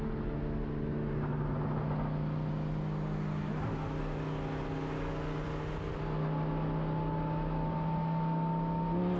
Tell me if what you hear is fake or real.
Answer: real